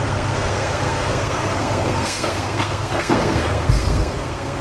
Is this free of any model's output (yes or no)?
no